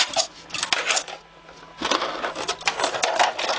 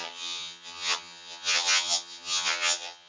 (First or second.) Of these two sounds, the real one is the first